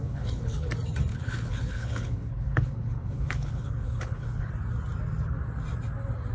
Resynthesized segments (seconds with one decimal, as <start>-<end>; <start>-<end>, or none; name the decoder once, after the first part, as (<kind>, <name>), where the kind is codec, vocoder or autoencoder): 0.0-0.7 (codec, HILCodec); 1.1-4.5